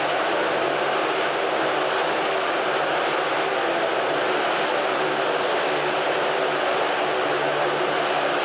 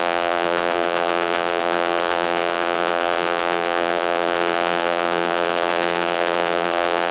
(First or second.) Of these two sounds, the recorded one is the first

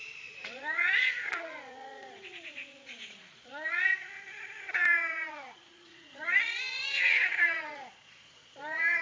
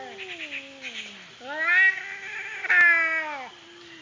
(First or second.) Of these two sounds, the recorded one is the second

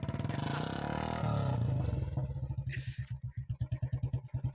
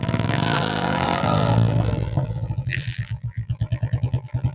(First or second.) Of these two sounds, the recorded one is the first